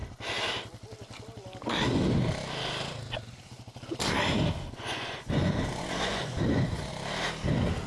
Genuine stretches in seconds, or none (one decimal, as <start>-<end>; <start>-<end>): 0.0-4.7; 6.9-7.9